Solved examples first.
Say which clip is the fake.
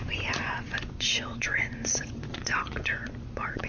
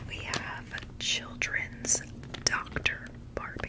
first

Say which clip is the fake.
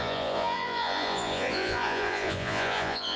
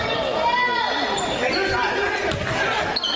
first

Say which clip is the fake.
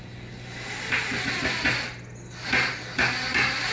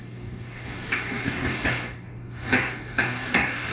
second